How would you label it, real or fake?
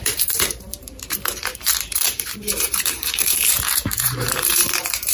fake